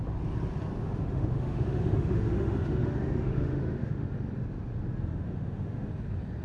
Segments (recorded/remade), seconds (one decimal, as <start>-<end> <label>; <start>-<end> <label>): 0.0-0.8 recorded; 0.8-4.1 remade; 4.1-5.1 recorded; 5.1-5.9 remade; 5.9-6.4 recorded